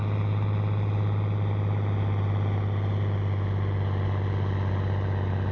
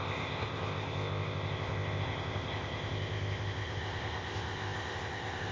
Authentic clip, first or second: first